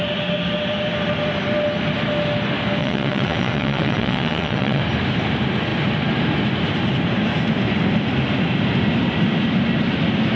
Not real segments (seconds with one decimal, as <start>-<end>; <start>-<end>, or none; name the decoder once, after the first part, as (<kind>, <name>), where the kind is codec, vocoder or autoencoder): 2.8-4.8 (vocoder, WaveNeXt)